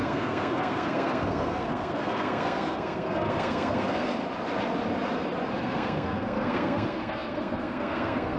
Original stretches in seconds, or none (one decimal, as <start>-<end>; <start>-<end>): 4.2-5.5